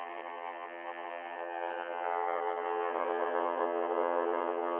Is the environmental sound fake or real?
fake